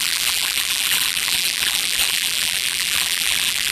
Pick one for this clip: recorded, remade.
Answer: remade